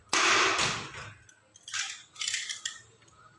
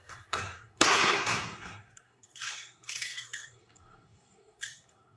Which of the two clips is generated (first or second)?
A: second